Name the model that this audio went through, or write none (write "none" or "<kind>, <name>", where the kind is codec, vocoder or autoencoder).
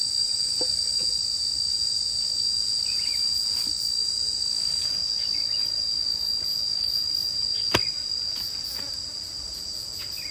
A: none